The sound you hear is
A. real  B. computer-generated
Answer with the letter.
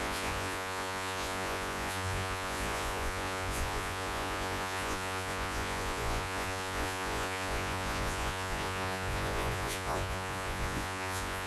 B